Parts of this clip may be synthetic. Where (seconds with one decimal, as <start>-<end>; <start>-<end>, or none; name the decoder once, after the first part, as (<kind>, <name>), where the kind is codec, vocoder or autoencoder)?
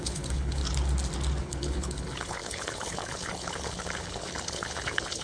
0.0-0.6 (codec, HILCodec); 1.4-5.2